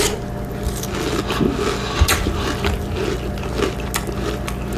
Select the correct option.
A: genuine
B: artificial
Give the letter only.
A